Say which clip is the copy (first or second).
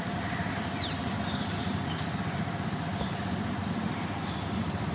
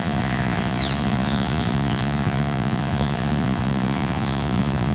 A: second